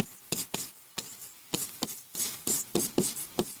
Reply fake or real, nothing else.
fake